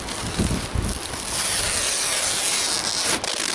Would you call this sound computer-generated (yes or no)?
no